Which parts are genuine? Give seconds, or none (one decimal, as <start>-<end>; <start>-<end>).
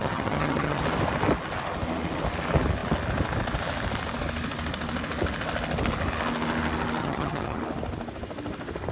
0.8-7.0; 7.6-8.9